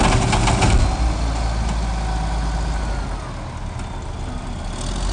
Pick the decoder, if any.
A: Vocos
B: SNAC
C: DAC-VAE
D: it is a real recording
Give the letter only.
D